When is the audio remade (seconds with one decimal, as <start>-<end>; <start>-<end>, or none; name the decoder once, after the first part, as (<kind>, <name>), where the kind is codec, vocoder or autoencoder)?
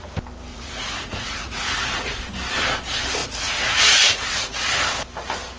0.5-2.2 (vocoder, Vocos); 3.2-4.7